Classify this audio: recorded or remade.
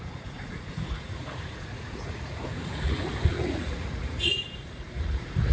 remade